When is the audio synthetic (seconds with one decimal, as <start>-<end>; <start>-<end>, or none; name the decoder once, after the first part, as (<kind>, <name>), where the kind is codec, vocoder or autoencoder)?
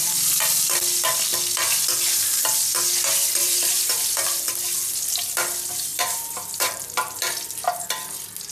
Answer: 3.4-4.4 (vocoder, BigVGAN v2); 5.9-7.2